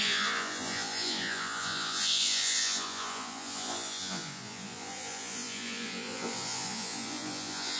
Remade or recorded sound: remade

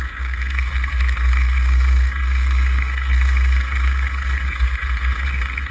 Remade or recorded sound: remade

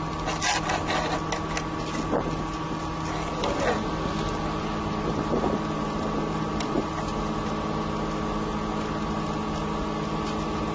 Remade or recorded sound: recorded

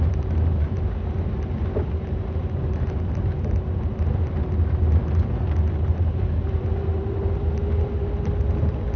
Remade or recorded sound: recorded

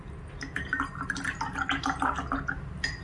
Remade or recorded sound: recorded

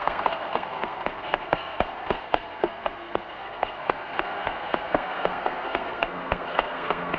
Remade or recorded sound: remade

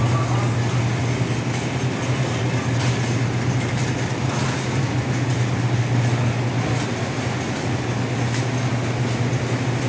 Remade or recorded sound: recorded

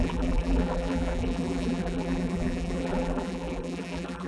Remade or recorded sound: remade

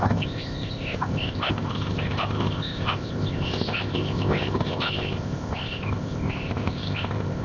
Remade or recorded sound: remade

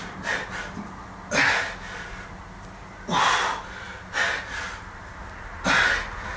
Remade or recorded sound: recorded